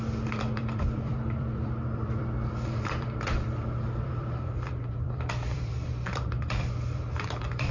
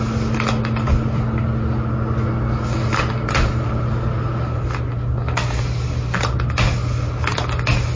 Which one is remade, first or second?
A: first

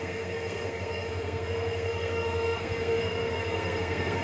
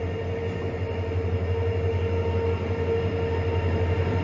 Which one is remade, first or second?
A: first